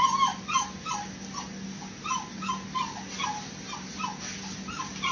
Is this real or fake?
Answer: real